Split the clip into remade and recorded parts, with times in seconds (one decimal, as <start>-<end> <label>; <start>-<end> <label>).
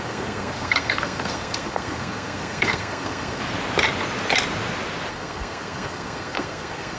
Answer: 0.0-3.4 remade; 3.4-5.1 recorded; 5.1-7.0 remade